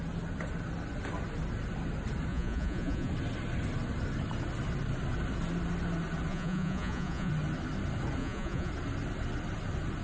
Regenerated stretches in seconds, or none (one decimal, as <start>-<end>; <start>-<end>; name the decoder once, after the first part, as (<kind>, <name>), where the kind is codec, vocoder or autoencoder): 2.3-3.1 (vocoder, Vocos); 6.3-7.3; 8.2-8.7